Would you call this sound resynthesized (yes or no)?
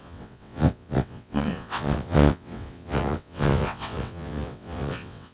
yes